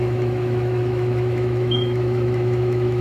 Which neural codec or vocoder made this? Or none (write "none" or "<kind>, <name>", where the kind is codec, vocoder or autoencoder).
autoencoder, DAC-VAE